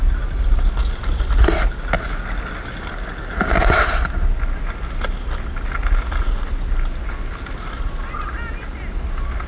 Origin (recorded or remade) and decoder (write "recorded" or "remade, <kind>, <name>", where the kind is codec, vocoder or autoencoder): recorded